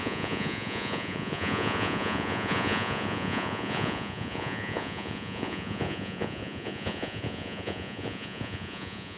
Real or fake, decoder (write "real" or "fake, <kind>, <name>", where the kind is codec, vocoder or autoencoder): fake, vocoder, Vocos